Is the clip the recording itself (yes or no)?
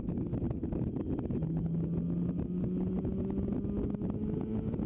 yes